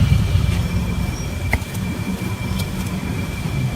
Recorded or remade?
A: recorded